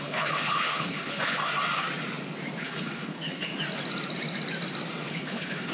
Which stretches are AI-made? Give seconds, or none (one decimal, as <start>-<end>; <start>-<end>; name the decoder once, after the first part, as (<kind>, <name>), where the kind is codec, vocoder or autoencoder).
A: 0.0-1.4 (codec, HILCodec); 2.6-3.5; 5.1-5.7